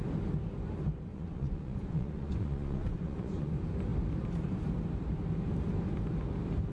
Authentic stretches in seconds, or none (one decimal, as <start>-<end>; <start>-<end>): 0.0-1.1; 3.5-6.7